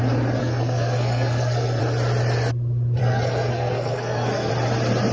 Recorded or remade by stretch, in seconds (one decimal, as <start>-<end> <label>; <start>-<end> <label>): 0.0-0.4 recorded; 0.4-1.8 remade; 1.8-3.0 recorded; 3.0-4.5 remade; 4.5-5.1 recorded

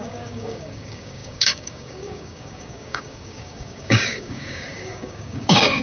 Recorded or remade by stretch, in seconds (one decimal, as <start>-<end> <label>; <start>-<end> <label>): 0.0-5.8 remade